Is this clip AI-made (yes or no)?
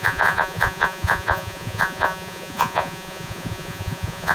yes